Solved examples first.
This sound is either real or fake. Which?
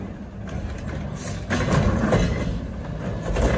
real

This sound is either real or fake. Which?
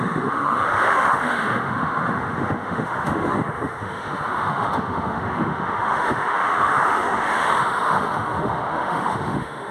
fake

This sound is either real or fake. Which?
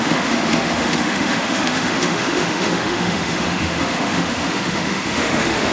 fake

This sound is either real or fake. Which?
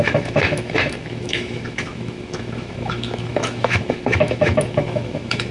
fake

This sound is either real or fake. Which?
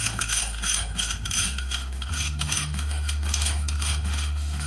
fake